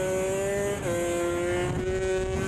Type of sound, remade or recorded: recorded